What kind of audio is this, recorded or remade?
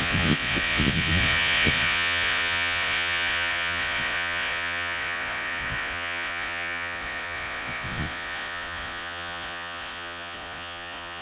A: remade